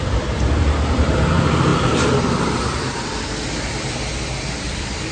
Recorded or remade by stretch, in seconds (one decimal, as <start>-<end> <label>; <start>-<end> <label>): 0.0-5.1 remade

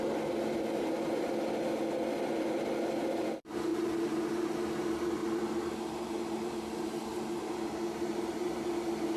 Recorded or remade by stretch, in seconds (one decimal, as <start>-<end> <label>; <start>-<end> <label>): 0.0-3.7 recorded; 3.7-4.7 remade; 4.7-5.2 recorded; 5.2-8.7 remade; 8.7-9.2 recorded

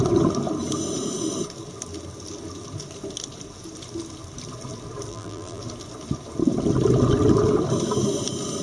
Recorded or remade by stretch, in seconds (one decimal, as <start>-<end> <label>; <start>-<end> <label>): 0.0-5.1 recorded; 5.1-5.6 remade; 5.6-8.6 recorded